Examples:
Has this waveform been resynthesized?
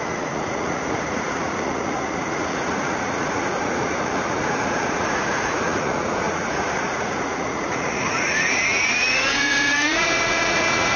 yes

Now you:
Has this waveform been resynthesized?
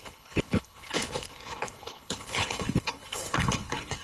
yes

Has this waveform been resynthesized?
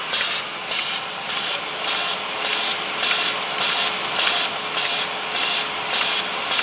no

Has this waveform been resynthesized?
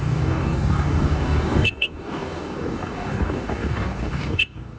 yes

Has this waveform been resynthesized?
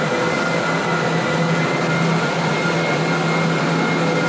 no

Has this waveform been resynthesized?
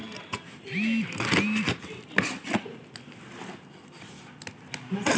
no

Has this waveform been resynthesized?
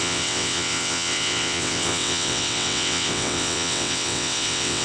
yes